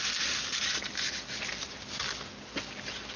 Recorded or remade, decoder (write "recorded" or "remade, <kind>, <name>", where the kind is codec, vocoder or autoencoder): recorded